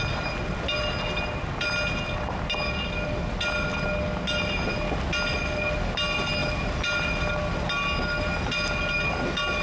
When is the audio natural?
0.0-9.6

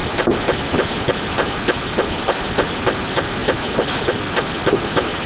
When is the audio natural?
0.0-5.3

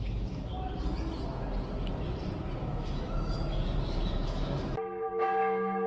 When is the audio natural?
0.5-2.6

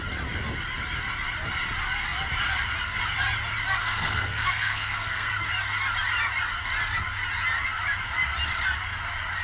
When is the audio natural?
0.0-3.8; 5.3-9.4

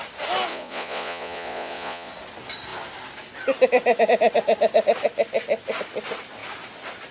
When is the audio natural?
0.0-0.5; 2.1-7.1

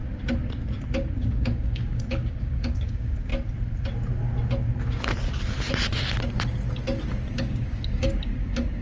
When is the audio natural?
0.0-1.2; 3.3-7.3